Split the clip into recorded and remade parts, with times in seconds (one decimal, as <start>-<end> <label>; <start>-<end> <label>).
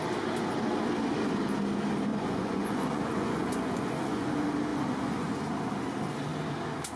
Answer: 0.0-2.1 recorded; 2.1-4.3 remade; 4.3-4.7 recorded; 4.7-5.4 remade; 5.4-7.0 recorded